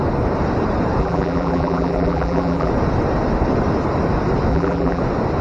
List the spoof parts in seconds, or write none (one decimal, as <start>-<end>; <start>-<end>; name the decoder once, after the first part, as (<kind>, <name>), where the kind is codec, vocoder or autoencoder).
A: 1.0-2.7 (vocoder, BigVGAN v2); 4.5-5.0